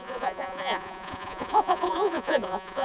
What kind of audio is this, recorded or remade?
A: remade